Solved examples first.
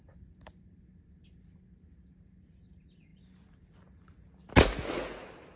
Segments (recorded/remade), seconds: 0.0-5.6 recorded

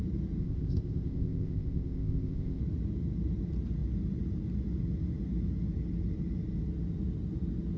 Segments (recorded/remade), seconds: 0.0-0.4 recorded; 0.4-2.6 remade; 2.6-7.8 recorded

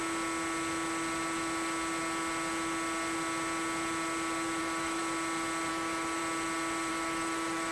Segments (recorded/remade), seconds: 0.0-4.6 recorded; 4.6-5.0 remade; 5.0-5.7 recorded; 5.7-6.2 remade; 6.2-6.9 recorded; 6.9-7.7 remade

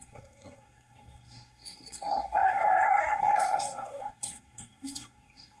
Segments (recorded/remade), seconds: 0.0-5.6 remade

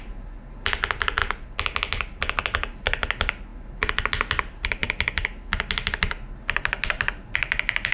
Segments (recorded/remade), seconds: 0.0-7.9 recorded